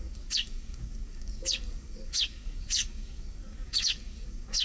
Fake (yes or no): yes